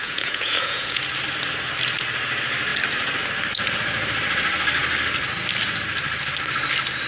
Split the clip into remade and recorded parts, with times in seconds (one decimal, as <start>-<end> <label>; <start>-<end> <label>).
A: 0.0-1.0 remade; 1.0-7.1 recorded